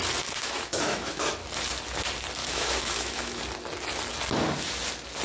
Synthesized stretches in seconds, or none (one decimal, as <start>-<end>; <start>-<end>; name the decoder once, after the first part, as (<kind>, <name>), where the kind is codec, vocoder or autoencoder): 0.4-1.3 (autoencoder, DAC-VAE); 2.4-3.4